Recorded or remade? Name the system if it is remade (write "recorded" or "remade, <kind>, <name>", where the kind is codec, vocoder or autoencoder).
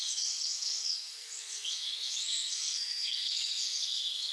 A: remade, codec, SNAC